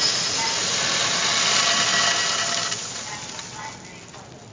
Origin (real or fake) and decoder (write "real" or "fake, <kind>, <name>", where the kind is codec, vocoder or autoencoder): real